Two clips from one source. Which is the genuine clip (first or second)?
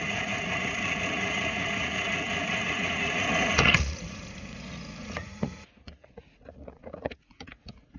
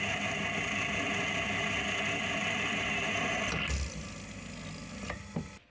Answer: second